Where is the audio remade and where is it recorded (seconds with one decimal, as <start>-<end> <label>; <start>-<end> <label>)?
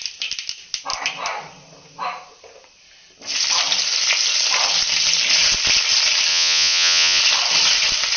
0.0-6.3 recorded; 6.3-7.2 remade; 7.2-8.2 recorded